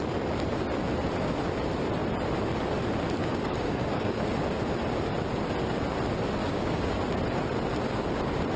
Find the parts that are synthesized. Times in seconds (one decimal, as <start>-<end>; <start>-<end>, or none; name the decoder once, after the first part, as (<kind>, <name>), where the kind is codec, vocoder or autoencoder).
3.2-4.2 (codec, DAC); 6.4-7.0